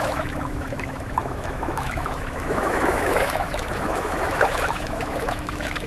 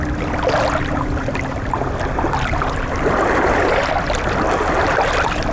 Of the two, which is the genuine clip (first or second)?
second